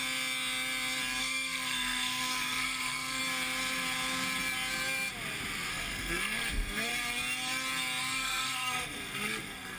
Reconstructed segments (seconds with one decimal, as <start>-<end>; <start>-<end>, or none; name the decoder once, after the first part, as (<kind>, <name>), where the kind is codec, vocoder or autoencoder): 1.2-3.2 (codec, SNAC); 5.7-6.9; 8.0-9.8